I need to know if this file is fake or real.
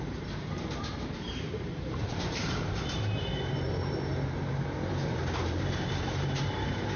fake